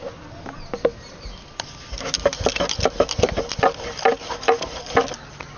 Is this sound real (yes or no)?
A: yes